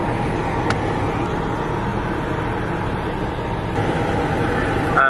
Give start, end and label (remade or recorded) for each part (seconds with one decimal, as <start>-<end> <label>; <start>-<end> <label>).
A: 0.0-5.1 recorded